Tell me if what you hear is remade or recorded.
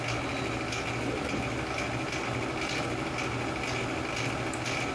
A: recorded